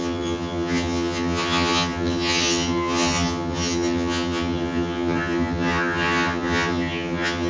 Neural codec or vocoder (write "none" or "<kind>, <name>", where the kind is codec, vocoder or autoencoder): vocoder, HiFi-GAN